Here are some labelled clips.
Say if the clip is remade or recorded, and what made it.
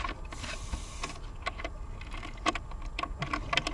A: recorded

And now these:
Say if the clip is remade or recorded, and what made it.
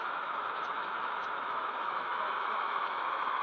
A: remade, autoencoder, DAC-VAE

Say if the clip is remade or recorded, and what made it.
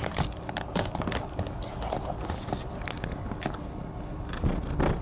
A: recorded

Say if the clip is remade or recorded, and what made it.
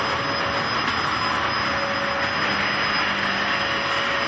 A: recorded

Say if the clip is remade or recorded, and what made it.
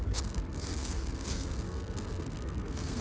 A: remade, codec, SNAC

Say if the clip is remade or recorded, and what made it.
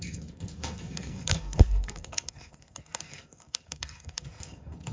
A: remade, codec, SNAC